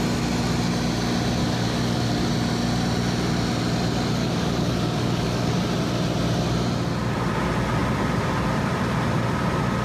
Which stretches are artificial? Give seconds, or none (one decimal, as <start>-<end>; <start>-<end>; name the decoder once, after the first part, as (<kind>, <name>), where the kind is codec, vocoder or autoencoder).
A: 1.4-2.3 (codec, DAC); 4.2-5.6